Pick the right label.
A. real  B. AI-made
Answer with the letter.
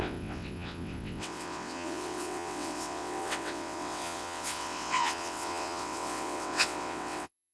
B